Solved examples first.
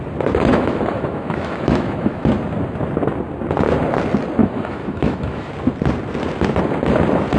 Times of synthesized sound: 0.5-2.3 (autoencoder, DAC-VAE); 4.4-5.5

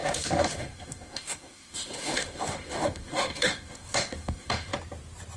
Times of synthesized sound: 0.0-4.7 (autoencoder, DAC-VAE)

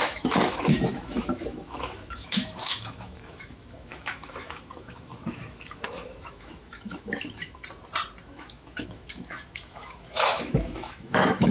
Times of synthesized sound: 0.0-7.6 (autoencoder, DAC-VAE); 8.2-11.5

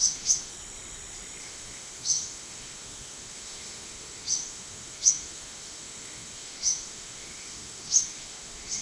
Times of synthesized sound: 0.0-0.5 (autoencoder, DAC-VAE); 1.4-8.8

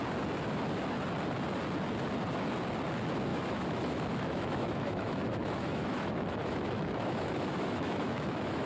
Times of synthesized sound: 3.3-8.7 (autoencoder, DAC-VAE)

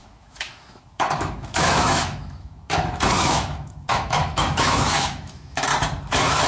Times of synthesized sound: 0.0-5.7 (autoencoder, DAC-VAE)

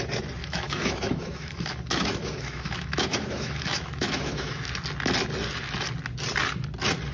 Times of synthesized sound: 0.4-4.7 (autoencoder, DAC-VAE)

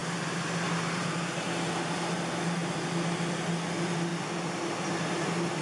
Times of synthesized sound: none